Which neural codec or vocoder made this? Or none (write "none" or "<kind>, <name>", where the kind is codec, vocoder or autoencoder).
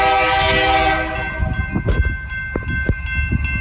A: none